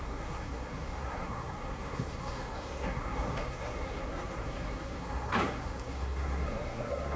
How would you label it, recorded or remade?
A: remade